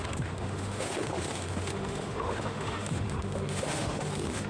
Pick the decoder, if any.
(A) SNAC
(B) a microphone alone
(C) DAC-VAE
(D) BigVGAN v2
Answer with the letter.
C